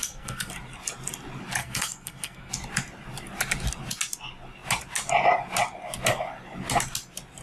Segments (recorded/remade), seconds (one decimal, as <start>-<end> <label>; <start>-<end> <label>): 0.0-0.5 remade; 0.5-1.6 recorded; 1.6-2.5 remade; 2.5-7.4 recorded